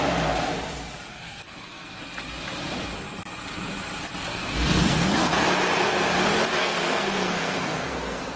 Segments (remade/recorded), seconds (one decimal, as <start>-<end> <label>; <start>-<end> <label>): 0.0-1.1 recorded; 1.1-2.0 remade; 2.0-4.3 recorded; 4.3-5.3 remade; 5.3-6.6 recorded; 6.6-8.4 remade